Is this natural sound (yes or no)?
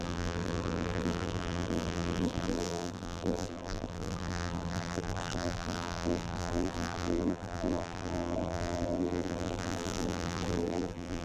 no